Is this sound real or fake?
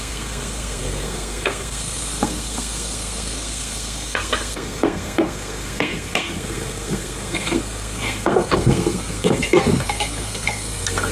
fake